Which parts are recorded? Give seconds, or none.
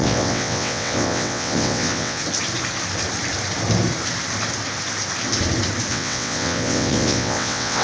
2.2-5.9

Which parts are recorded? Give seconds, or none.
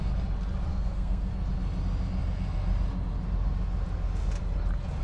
0.0-0.7; 1.3-5.0